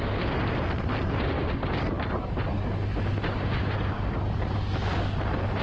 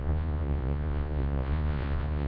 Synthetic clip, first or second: second